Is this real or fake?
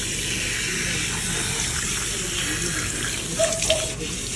fake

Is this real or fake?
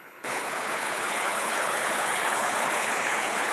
fake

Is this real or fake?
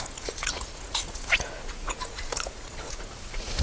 fake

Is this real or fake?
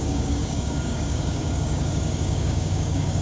fake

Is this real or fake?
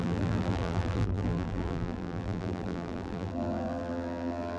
fake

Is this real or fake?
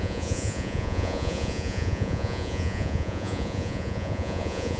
fake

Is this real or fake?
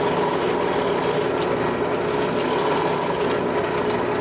real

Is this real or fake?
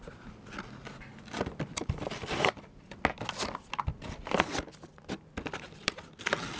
real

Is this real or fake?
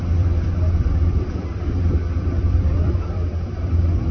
fake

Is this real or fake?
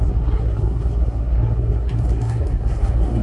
fake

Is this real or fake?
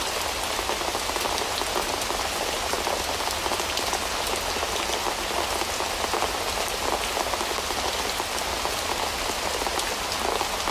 real